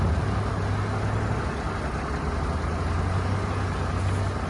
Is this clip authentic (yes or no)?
yes